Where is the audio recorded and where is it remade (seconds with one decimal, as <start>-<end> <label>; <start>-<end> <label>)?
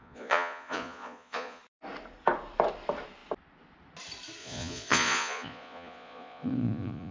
0.0-1.6 remade; 1.6-4.4 recorded; 4.4-7.1 remade